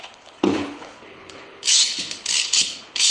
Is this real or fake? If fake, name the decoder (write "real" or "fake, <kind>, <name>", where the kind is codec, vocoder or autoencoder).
fake, codec, HILCodec